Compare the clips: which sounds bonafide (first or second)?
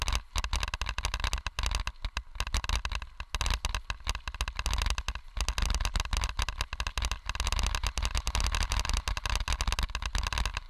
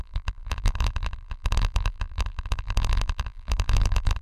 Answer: first